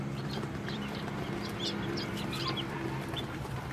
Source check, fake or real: fake